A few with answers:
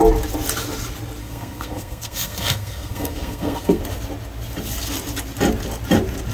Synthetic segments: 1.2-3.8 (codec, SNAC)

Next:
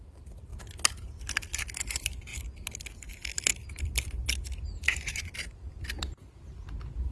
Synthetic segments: 0.0-0.5 (vocoder, BigVGAN v2); 1.2-2.3; 3.8-4.2; 5.1-6.0

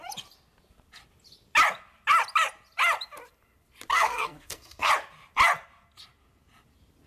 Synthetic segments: 3.9-4.9 (codec, SNAC)

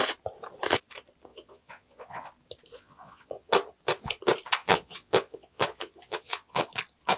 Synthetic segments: 1.3-2.3 (vocoder, Vocos); 2.7-3.5; 4.6-6.7